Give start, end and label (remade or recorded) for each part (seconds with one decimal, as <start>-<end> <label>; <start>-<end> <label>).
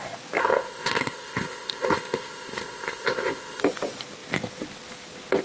0.0-0.4 recorded; 0.4-3.6 remade; 3.6-5.4 recorded